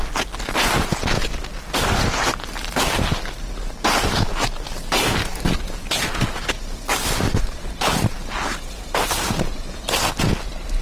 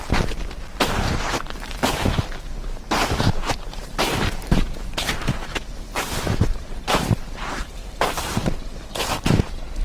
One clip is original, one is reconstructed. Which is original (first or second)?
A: first